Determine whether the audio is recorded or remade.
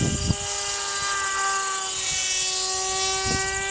recorded